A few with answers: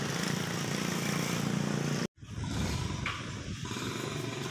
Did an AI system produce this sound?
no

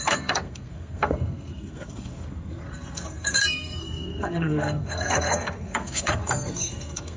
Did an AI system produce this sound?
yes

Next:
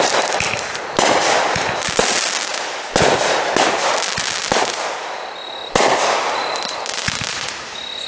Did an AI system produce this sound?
no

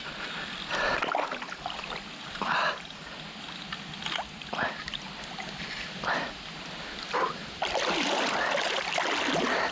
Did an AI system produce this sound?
no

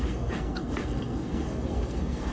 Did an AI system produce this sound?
yes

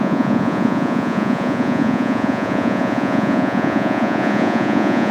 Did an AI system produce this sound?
yes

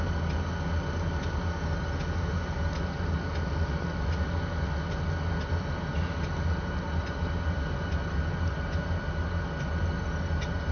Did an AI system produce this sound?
no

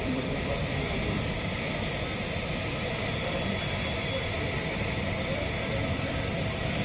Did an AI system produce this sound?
yes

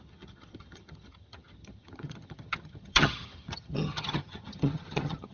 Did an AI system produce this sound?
yes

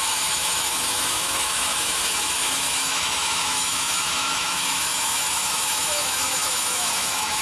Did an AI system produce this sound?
yes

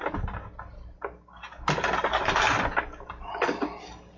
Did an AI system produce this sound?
no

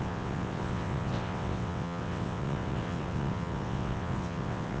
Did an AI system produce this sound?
yes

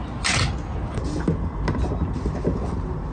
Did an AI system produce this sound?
no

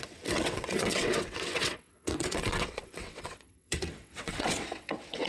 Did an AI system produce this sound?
yes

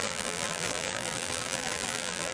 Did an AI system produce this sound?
yes